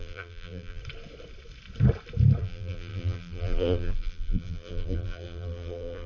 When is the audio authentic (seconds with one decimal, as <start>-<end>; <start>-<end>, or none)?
0.8-2.4